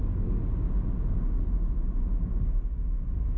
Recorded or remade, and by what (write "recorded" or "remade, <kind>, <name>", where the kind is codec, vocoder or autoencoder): recorded